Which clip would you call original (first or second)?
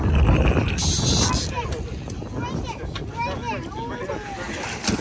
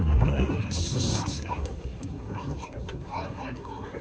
first